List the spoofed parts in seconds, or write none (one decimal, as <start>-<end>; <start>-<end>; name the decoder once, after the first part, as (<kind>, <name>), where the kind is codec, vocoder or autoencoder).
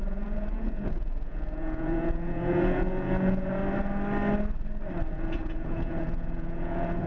0.0-3.6 (vocoder, Vocos); 5.1-7.1